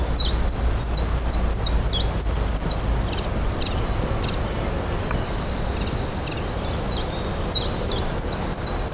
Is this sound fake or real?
real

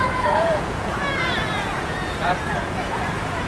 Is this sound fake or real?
fake